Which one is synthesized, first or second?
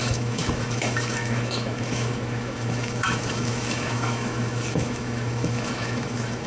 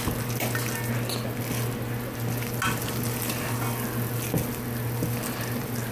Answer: first